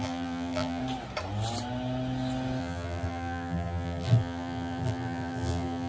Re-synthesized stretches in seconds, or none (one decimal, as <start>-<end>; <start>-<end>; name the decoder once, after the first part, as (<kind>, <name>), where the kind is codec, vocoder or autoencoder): 0.0-0.8 (vocoder, BigVGAN v2); 2.6-5.9